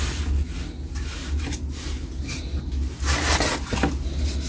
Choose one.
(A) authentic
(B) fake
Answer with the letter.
A